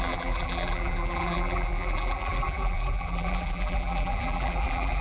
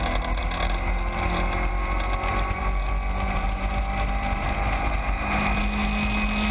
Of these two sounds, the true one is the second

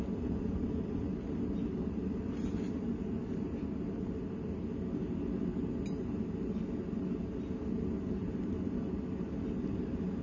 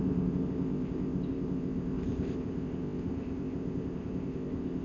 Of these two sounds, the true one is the first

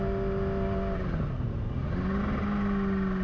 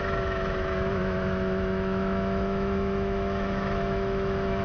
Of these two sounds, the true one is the first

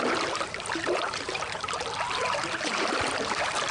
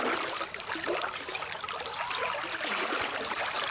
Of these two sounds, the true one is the second